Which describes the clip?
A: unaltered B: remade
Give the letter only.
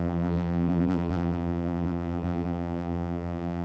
B